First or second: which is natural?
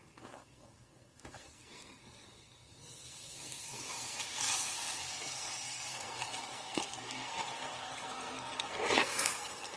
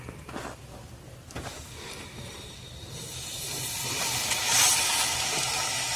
second